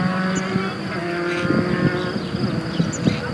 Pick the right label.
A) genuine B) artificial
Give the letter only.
A